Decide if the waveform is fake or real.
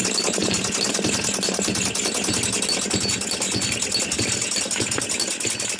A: real